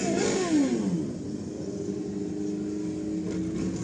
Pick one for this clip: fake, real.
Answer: real